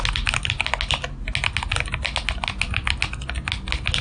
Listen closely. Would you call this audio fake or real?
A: real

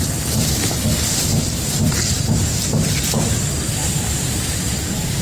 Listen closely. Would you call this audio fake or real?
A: real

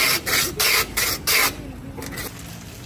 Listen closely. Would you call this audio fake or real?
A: real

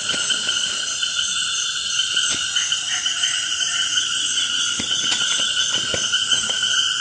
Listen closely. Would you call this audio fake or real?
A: real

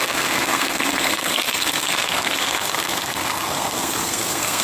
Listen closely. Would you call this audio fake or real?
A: fake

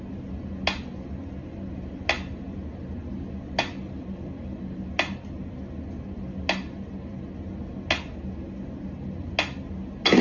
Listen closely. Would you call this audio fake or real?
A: real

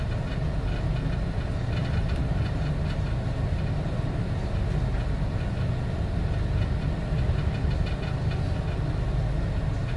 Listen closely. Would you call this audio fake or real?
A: real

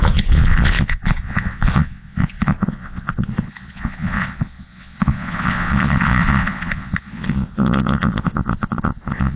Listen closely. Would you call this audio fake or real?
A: fake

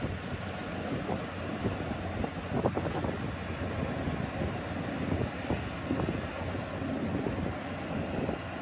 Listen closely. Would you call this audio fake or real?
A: real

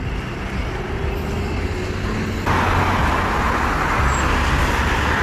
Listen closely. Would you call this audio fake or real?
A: real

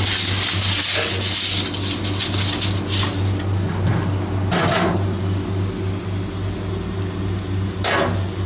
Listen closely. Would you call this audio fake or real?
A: real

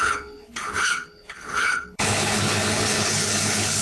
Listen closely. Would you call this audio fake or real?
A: fake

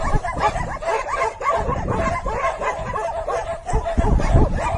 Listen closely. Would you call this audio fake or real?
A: real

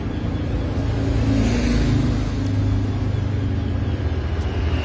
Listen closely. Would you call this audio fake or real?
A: real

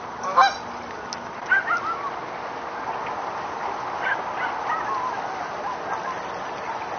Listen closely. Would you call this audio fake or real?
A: real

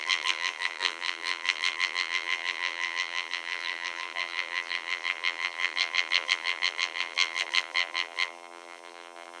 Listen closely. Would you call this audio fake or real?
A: fake